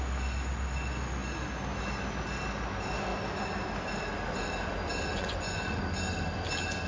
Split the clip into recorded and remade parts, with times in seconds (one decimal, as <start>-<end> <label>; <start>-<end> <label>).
0.0-5.1 recorded; 5.1-5.8 remade; 5.8-6.9 recorded